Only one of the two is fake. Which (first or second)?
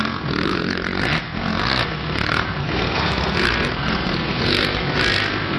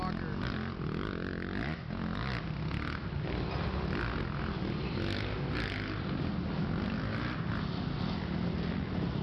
first